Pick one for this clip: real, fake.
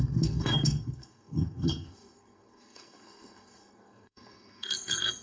fake